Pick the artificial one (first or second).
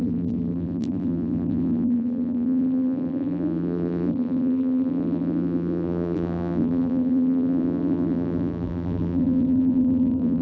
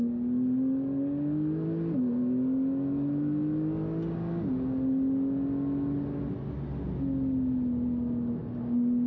first